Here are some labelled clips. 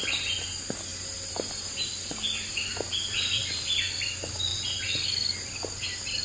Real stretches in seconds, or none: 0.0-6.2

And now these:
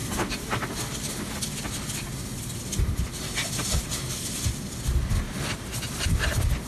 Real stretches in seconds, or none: 0.0-6.7

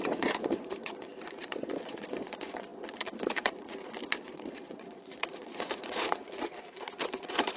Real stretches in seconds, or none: none

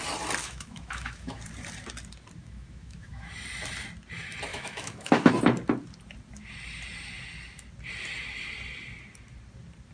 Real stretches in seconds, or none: 0.0-0.4; 1.4-2.4; 3.3-4.5; 5.3-9.9

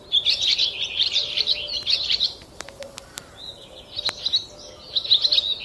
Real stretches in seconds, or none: 0.0-0.5; 3.3-5.6

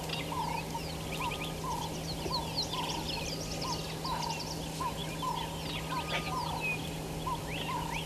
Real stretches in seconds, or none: 0.0-8.1